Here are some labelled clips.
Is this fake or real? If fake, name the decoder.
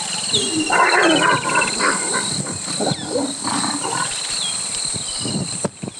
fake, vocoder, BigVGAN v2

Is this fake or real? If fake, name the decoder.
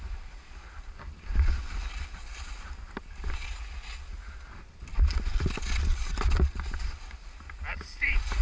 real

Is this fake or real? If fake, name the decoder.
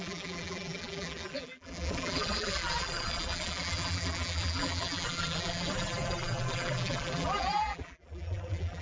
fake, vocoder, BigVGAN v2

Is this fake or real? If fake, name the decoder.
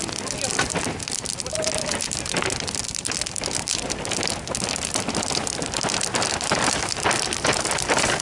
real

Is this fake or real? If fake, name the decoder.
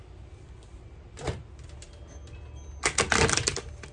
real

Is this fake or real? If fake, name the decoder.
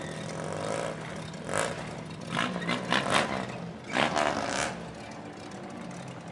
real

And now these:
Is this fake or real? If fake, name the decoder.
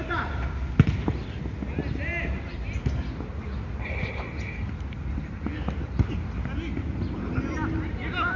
real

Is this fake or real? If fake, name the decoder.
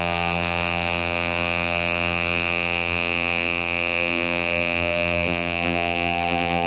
fake, vocoder, BigVGAN v2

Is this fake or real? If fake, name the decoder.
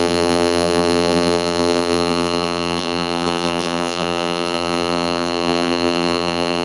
fake, vocoder, BigVGAN v2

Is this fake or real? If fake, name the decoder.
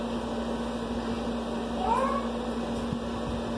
real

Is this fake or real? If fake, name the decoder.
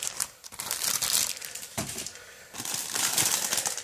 fake, vocoder, BigVGAN v2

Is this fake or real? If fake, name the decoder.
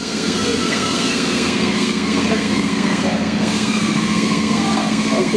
fake, codec, SNAC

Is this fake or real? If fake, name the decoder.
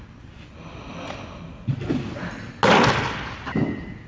real